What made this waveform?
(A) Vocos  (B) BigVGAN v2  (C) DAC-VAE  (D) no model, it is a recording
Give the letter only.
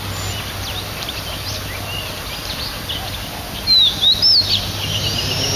D